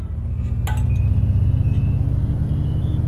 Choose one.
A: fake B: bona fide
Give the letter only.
B